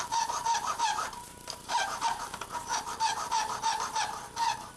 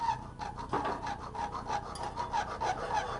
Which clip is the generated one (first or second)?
first